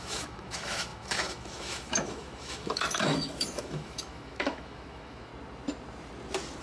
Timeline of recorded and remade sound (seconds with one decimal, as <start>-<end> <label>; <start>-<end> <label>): 0.0-5.3 remade; 5.3-6.6 recorded